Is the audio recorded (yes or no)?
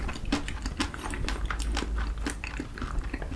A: yes